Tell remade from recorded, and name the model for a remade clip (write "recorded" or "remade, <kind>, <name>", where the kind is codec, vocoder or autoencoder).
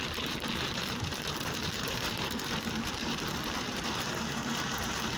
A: remade, vocoder, BigVGAN v2